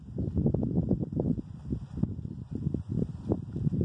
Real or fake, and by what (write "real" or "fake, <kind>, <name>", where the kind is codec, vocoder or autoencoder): real